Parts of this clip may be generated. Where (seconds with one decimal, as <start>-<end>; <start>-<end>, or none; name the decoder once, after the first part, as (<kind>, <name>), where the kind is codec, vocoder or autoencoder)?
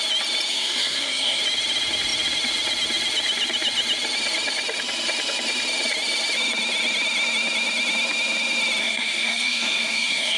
0.5-1.4 (codec, SNAC); 8.8-10.4